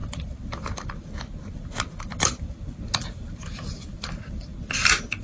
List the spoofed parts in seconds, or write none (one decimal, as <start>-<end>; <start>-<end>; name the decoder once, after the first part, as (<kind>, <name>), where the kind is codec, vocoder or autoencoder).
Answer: 0.0-5.2 (vocoder, BigVGAN v2)